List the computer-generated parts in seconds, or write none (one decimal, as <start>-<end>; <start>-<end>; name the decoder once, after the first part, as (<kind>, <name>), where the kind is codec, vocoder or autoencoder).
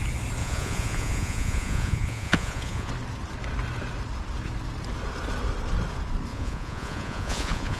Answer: 0.4-2.9 (vocoder, Vocos); 6.3-7.8